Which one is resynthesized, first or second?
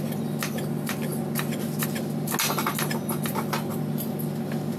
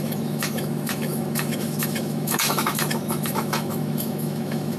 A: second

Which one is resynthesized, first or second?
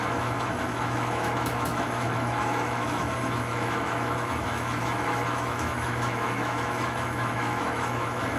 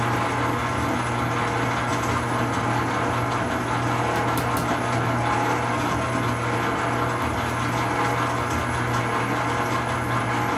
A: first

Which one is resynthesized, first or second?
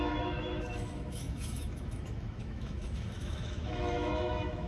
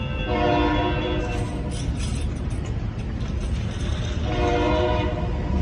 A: first